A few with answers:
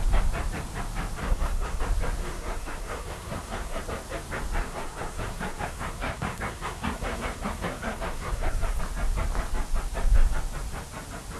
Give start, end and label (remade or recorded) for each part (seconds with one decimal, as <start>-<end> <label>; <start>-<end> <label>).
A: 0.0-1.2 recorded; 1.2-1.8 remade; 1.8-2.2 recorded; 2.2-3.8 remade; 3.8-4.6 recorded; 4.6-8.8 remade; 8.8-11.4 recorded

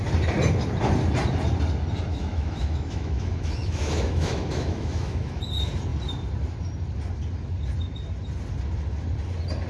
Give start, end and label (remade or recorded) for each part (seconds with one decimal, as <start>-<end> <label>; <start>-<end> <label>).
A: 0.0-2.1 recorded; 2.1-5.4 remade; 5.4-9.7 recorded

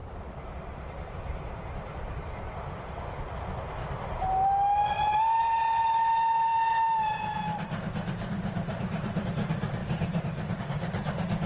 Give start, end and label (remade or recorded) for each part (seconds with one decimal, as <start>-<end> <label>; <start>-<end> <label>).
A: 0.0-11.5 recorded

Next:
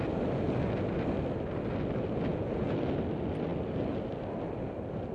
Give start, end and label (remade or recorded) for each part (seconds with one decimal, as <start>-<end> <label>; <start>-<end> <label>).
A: 0.0-2.3 recorded; 2.3-2.8 remade; 2.8-5.1 recorded